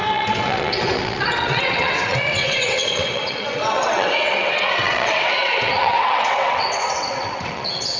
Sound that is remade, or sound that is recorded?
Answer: remade